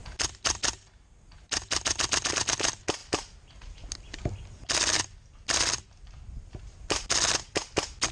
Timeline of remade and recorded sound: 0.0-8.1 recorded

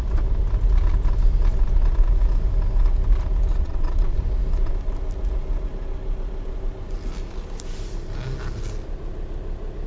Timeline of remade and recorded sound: 0.0-3.6 recorded; 3.6-4.2 remade; 4.2-9.9 recorded

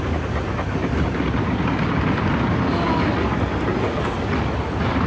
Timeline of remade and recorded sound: 0.0-5.1 recorded

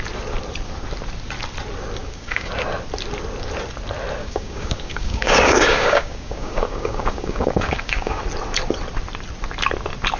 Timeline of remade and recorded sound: 0.0-2.0 recorded; 2.0-2.5 remade; 2.5-4.2 recorded; 4.2-8.2 remade; 8.2-10.2 recorded

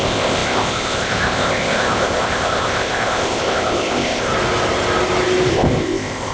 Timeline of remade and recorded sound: 0.0-4.3 remade; 4.3-5.5 recorded; 5.5-6.3 remade

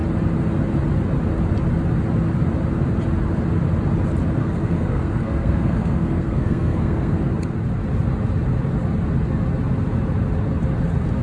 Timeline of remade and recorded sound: 0.0-4.4 recorded; 4.4-7.2 remade; 7.2-11.2 recorded

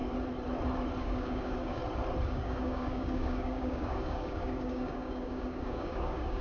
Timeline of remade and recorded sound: 0.0-1.0 recorded; 1.0-1.8 remade; 1.8-2.3 recorded; 2.3-6.4 remade

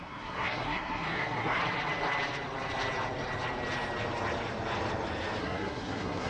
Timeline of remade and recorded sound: 0.0-1.6 remade; 1.6-5.4 recorded; 5.4-6.3 remade